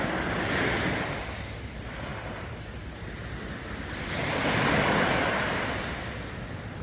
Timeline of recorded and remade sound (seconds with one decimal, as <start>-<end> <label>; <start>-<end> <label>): 0.0-6.8 recorded